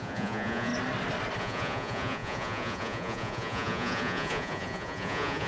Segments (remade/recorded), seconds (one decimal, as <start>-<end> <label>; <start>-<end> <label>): 0.0-0.7 remade; 0.7-1.4 recorded; 1.4-5.5 remade